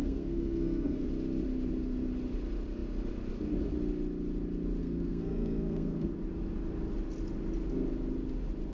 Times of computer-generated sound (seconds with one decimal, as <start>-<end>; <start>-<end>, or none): 0.0-1.1; 4.8-6.1